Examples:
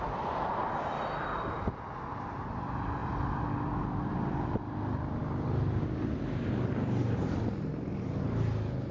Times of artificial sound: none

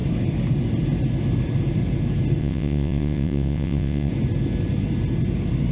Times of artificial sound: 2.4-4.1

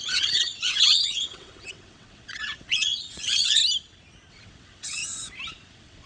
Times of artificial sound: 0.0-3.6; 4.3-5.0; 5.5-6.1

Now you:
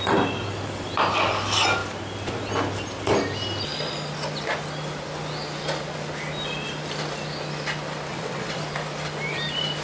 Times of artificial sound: 8.1-8.6

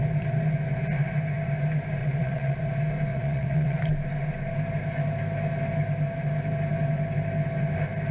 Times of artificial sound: 2.0-2.6; 3.1-3.8